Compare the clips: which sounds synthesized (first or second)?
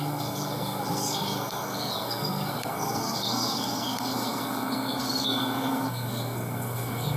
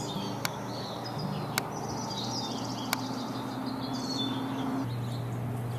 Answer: first